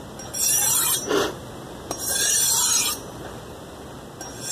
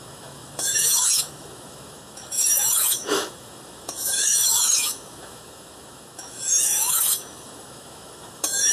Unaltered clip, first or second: first